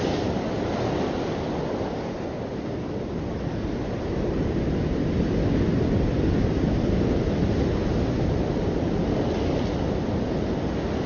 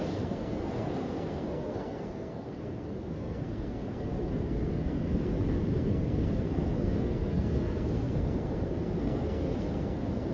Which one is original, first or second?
first